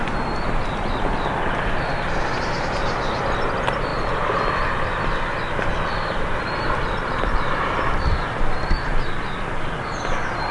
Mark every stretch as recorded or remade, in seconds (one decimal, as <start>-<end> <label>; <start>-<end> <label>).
0.0-10.5 recorded